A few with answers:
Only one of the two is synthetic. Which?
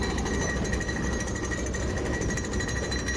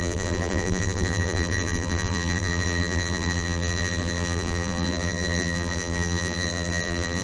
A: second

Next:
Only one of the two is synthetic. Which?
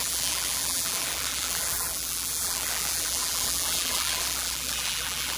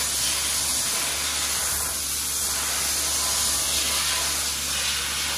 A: first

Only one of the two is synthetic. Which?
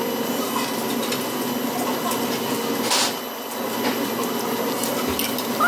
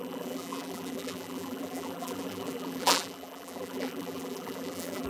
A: second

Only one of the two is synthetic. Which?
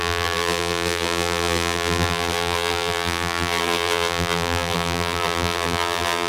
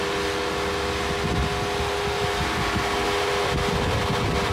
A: first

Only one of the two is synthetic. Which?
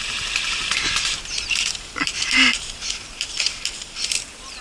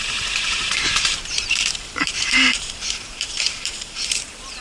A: second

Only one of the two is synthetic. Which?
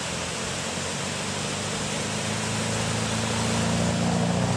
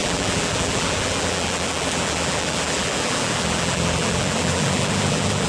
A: second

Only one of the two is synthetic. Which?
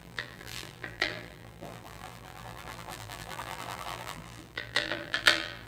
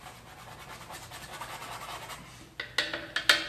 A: first